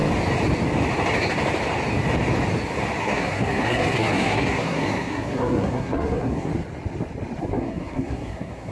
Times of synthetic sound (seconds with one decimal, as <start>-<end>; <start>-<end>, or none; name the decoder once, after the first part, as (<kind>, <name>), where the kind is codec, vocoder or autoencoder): 3.0-6.5 (codec, SNAC); 7.4-8.7